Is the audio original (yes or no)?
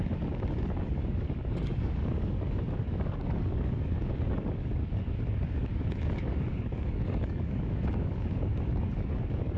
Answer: no